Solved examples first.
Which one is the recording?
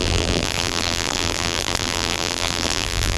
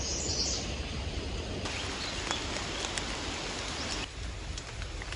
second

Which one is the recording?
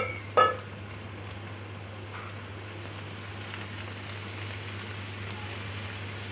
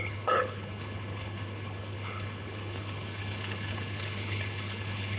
first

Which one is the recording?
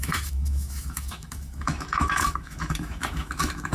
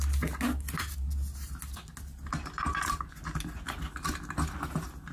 second